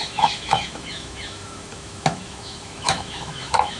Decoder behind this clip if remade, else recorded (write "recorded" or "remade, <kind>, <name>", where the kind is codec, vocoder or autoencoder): remade, autoencoder, DAC-VAE